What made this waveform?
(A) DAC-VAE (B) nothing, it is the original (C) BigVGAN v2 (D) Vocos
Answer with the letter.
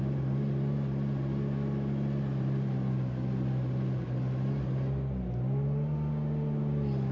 B